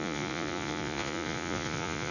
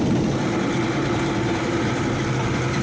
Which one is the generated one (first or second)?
first